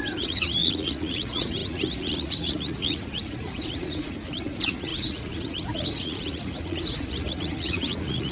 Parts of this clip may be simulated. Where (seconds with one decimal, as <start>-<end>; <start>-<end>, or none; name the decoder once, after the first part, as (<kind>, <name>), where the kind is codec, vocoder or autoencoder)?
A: 0.0-8.3 (vocoder, Vocos)